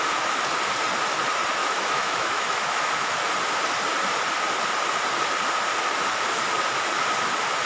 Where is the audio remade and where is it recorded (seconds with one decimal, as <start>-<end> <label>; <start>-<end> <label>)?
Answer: 0.0-1.6 recorded; 1.6-3.3 remade; 3.3-7.7 recorded